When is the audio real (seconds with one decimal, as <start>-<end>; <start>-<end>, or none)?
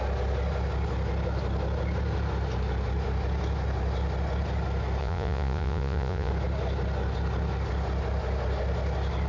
0.0-5.0; 6.3-9.3